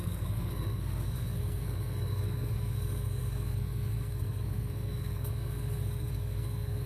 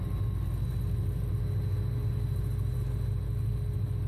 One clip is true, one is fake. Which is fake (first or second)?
first